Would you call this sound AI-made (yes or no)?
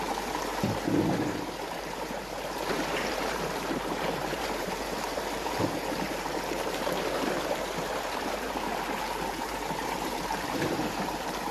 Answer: yes